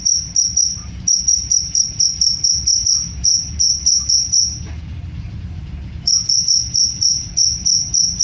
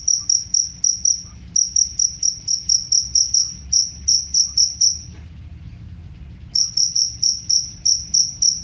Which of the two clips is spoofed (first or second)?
first